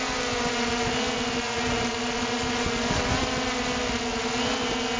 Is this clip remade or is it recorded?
recorded